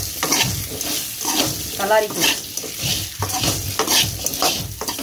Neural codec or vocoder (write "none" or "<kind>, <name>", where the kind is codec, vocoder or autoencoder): none